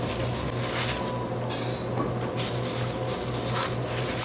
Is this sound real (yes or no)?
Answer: yes